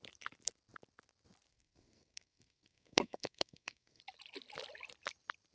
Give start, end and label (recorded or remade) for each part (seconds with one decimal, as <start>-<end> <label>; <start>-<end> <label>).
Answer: 0.0-1.5 recorded; 1.5-4.0 remade; 4.0-5.5 recorded